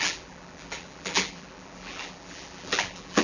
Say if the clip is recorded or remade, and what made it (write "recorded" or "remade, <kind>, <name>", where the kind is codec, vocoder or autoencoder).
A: remade, vocoder, BigVGAN v2